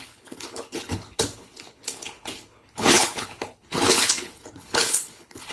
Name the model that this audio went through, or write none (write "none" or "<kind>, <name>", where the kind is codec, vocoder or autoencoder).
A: codec, HILCodec